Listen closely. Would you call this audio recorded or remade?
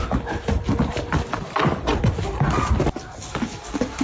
recorded